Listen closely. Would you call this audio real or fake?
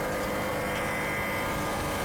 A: real